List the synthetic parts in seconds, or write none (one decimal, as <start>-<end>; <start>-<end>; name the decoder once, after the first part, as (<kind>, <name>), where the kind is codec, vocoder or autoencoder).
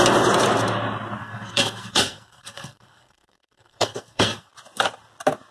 1.2-4.5 (codec, SNAC)